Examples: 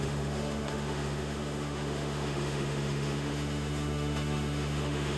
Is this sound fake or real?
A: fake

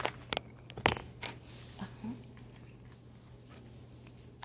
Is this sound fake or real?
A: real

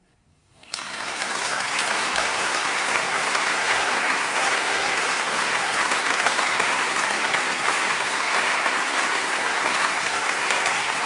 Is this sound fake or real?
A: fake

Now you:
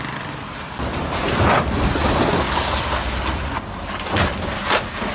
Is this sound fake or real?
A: real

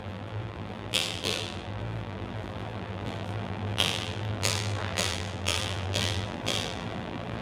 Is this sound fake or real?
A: fake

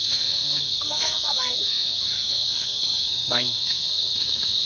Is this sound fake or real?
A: fake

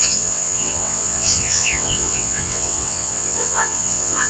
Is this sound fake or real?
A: fake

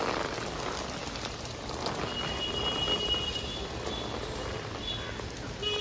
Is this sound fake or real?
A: real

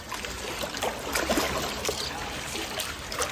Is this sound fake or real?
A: real